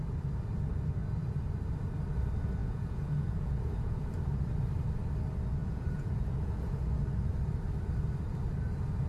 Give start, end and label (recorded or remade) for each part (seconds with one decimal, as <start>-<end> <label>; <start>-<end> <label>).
0.0-2.6 recorded; 2.6-4.1 remade; 4.1-5.6 recorded; 5.6-7.0 remade; 7.0-9.1 recorded